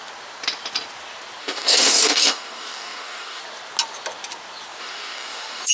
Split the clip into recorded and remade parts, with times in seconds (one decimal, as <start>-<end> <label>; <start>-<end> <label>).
0.0-1.4 recorded; 1.4-3.4 remade; 3.4-4.8 recorded; 4.8-5.7 remade